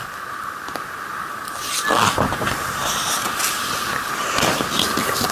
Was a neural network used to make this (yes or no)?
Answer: no